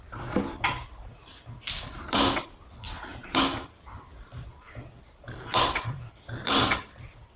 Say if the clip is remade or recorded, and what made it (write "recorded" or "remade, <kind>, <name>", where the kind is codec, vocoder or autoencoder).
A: remade, vocoder, BigVGAN v2